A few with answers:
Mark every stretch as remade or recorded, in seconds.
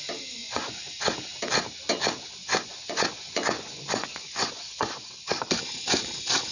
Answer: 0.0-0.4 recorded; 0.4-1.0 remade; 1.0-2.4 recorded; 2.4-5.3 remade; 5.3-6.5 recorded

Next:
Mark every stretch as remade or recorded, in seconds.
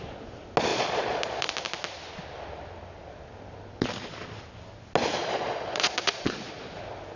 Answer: 0.0-0.7 recorded; 0.7-1.5 remade; 1.5-5.2 recorded; 5.2-6.8 remade; 6.8-7.2 recorded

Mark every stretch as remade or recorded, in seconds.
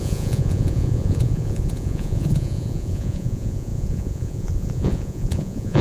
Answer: 0.0-5.8 remade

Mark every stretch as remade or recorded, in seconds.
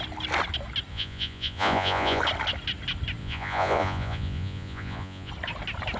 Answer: 0.0-0.9 recorded; 0.9-2.2 remade; 2.2-3.2 recorded; 3.2-5.3 remade; 5.3-6.0 recorded